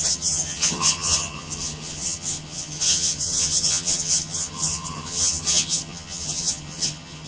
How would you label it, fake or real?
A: fake